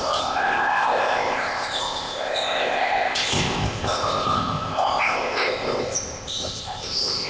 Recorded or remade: remade